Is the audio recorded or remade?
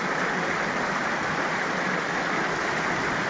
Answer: recorded